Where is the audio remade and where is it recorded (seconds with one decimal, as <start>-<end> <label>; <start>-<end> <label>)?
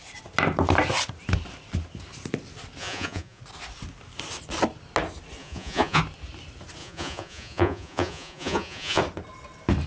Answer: 0.0-2.8 recorded; 2.8-3.4 remade; 3.4-5.4 recorded; 5.4-6.0 remade; 6.0-6.8 recorded; 6.8-9.0 remade; 9.0-9.9 recorded